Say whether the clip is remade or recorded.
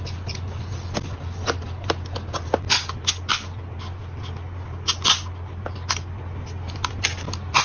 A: recorded